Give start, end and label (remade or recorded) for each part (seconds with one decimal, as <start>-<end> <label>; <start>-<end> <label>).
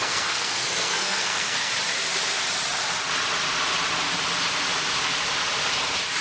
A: 0.0-1.7 remade; 1.7-6.2 recorded